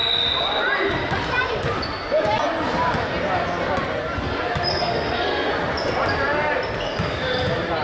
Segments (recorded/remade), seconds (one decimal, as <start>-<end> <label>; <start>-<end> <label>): 0.0-4.7 recorded; 4.7-5.5 remade; 5.5-7.8 recorded